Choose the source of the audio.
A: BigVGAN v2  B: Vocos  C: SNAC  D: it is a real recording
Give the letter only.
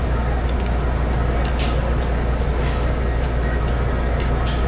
D